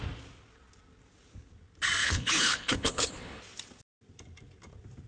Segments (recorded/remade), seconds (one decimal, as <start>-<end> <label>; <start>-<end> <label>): 0.0-2.0 recorded; 2.0-3.4 remade; 3.4-5.1 recorded